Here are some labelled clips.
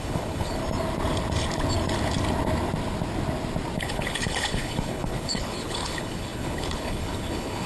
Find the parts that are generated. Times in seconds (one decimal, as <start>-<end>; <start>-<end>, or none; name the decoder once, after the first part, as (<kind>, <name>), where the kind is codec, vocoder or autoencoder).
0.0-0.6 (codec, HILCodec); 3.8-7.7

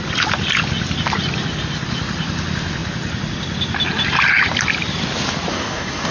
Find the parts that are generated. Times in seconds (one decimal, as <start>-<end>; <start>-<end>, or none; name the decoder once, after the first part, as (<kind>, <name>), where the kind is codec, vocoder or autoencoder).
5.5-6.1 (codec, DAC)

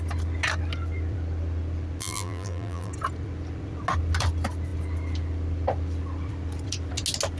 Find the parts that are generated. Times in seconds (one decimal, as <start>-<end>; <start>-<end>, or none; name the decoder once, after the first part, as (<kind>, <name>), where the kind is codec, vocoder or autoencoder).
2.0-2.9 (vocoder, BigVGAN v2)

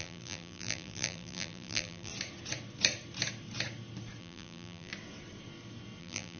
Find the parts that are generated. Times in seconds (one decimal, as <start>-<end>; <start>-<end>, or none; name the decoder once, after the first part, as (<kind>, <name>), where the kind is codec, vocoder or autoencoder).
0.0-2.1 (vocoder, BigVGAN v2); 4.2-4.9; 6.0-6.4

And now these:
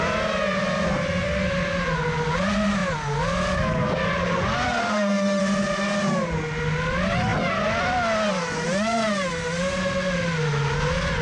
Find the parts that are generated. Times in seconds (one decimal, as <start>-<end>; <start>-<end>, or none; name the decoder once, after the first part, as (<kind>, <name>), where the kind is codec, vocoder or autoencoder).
4.8-5.4 (autoencoder, DAC-VAE)

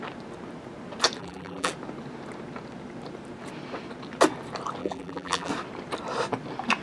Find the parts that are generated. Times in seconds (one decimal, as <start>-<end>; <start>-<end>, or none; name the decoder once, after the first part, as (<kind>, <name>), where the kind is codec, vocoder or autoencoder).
1.2-1.7 (vocoder, BigVGAN v2); 4.8-5.5

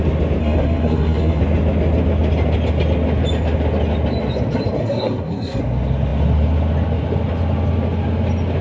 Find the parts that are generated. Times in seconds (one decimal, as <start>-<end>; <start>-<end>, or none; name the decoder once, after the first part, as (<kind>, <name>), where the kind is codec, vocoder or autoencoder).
0.4-1.4 (codec, SNAC); 4.8-5.6